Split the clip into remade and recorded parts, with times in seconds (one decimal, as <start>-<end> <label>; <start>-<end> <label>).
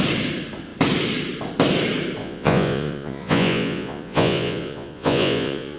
0.0-2.2 recorded; 2.2-5.8 remade